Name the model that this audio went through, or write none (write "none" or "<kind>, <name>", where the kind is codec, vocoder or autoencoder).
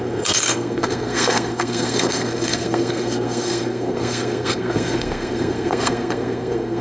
codec, SNAC